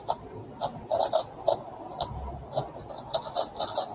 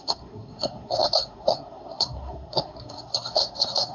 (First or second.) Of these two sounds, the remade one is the second